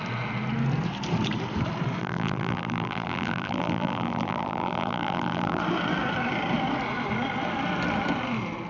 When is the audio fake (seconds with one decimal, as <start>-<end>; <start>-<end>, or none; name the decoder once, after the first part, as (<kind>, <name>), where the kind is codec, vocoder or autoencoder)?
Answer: 2.0-5.6 (vocoder, BigVGAN v2)